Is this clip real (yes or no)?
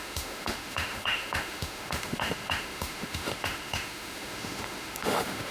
no